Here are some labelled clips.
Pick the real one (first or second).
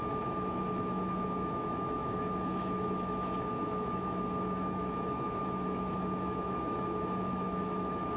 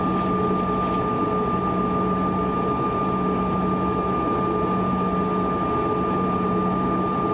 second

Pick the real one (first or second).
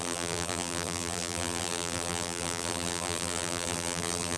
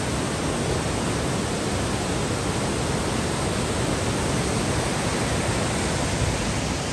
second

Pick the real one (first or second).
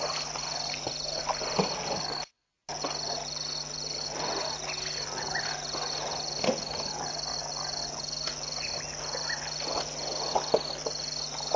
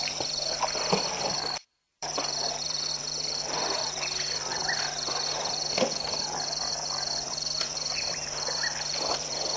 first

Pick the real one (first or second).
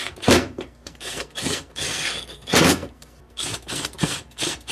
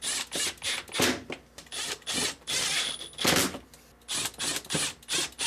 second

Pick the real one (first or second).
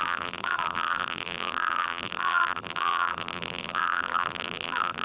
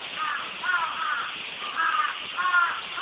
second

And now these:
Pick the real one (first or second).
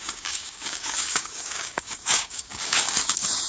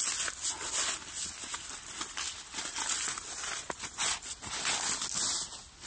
second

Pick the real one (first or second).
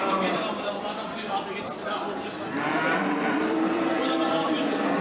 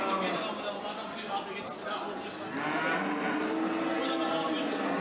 second